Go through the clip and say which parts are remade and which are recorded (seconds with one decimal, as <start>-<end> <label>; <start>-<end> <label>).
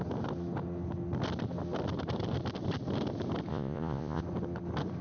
0.0-3.5 recorded; 3.5-4.2 remade; 4.2-5.0 recorded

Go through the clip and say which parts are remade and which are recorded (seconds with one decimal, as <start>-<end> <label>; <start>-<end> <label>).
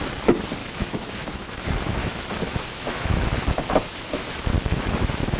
0.0-0.6 recorded; 0.6-1.6 remade; 1.6-2.0 recorded; 2.0-5.4 remade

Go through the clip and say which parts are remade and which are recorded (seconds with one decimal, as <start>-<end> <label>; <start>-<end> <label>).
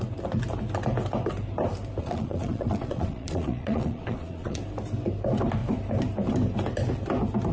0.0-2.0 recorded; 2.0-4.6 remade; 4.6-7.5 recorded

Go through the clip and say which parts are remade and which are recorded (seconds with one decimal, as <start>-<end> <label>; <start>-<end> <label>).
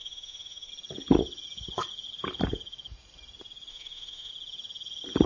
0.0-0.7 remade; 0.7-3.7 recorded; 3.7-4.3 remade; 4.3-5.3 recorded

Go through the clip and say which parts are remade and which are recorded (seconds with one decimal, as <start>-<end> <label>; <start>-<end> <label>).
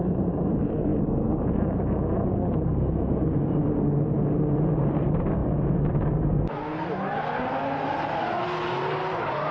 0.0-9.5 recorded